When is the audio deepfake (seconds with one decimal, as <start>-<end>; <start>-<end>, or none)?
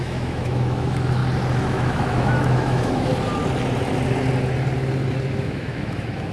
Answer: 0.0-1.2; 1.7-3.1; 5.4-6.3